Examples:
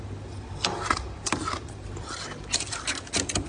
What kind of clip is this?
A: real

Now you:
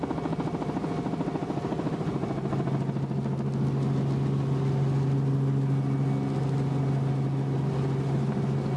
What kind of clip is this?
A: real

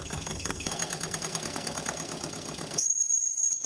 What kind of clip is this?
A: fake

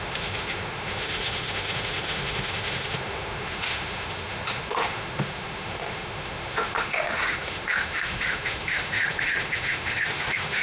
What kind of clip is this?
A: fake